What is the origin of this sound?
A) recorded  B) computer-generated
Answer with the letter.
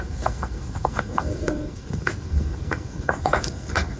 B